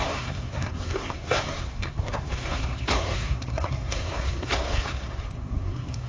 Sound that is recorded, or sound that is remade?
remade